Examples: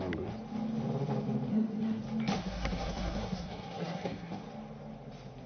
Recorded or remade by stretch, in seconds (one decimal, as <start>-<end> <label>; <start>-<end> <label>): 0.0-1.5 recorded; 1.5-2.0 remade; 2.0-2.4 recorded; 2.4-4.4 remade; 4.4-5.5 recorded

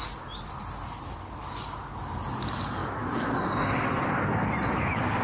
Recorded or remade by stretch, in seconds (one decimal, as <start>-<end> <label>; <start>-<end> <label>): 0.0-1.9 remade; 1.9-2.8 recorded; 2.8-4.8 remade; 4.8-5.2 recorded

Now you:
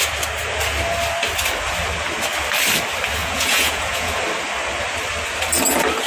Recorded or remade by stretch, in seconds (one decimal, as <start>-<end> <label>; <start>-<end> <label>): 0.0-3.2 recorded; 3.2-4.2 remade; 4.2-6.1 recorded